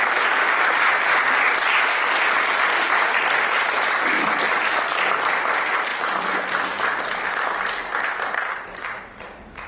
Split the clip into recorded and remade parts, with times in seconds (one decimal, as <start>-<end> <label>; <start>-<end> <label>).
0.0-9.7 recorded